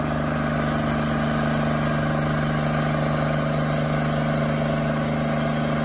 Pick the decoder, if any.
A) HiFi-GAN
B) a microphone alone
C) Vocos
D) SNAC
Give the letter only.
B